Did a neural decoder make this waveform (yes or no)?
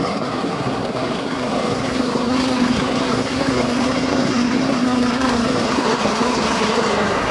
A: yes